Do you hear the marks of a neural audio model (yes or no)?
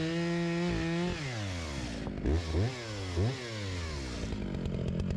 no